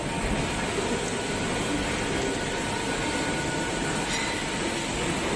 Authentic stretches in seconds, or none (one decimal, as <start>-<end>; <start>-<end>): 0.0-5.4